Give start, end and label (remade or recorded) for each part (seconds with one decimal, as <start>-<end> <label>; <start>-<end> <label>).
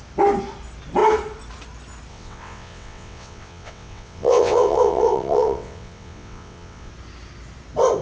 0.0-2.1 recorded; 2.1-6.9 remade; 6.9-8.0 recorded